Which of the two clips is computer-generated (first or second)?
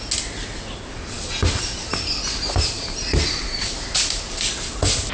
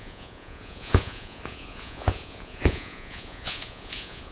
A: second